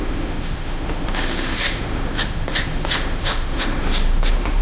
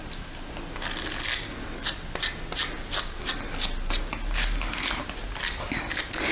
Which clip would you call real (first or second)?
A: second